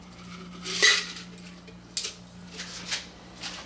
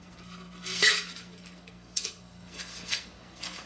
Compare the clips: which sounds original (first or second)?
first